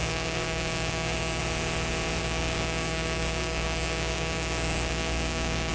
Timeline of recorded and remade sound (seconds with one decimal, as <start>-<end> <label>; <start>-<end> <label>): 0.0-1.4 remade; 1.4-2.2 recorded; 2.2-5.7 remade